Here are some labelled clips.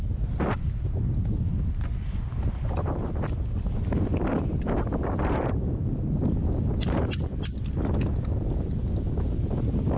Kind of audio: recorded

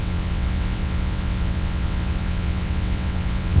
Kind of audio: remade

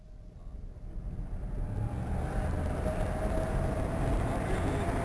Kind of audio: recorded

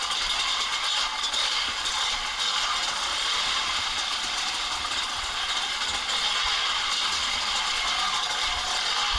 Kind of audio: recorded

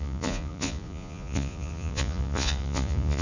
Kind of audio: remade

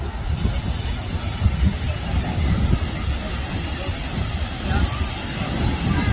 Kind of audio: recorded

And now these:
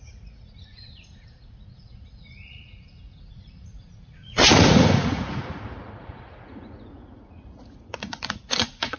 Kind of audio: remade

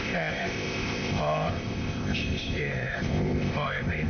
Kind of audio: remade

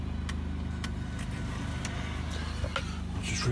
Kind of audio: recorded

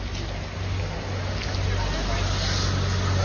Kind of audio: recorded